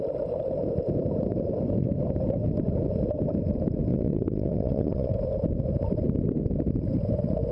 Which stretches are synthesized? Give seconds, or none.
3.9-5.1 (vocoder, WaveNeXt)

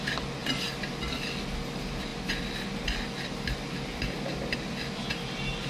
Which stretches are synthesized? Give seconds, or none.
none